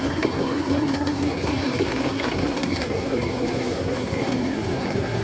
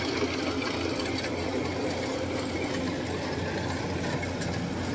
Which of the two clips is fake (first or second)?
first